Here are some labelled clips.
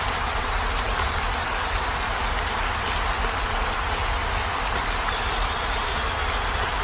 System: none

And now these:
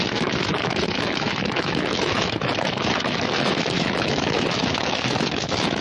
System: autoencoder, DAC-VAE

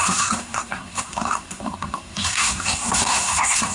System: codec, SNAC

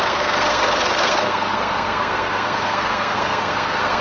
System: codec, SNAC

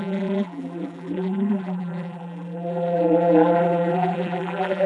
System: vocoder, BigVGAN v2